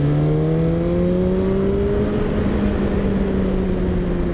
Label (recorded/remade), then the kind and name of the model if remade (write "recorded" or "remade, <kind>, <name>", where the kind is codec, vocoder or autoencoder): recorded